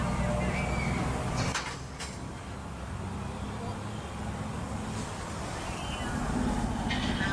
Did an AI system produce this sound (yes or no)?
no